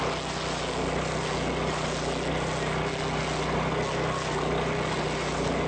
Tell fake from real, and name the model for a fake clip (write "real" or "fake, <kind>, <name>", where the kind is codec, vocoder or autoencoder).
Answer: real